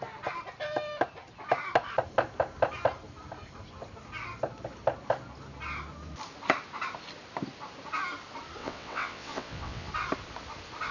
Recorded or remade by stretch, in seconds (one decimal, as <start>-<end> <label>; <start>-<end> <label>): 0.0-8.6 recorded; 8.6-9.9 remade; 9.9-10.9 recorded

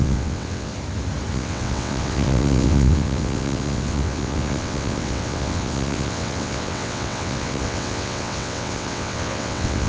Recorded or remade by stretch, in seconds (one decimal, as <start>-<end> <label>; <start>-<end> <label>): 0.0-0.7 remade; 0.7-1.3 recorded; 1.3-9.9 remade

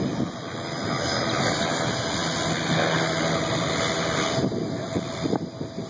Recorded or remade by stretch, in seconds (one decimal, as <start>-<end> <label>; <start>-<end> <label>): 0.0-5.9 recorded

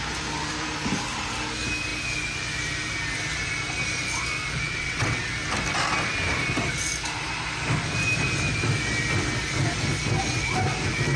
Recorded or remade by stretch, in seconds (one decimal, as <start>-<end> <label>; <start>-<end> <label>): 0.0-4.7 recorded; 4.7-5.3 remade; 5.3-11.2 recorded

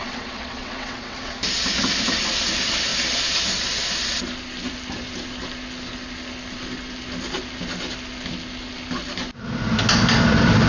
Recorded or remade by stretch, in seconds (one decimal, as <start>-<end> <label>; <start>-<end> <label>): 0.0-1.3 remade; 1.3-10.7 recorded

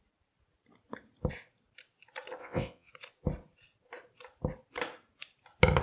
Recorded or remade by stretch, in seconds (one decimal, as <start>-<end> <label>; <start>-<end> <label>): 0.0-2.4 recorded; 2.4-2.9 remade; 2.9-5.8 recorded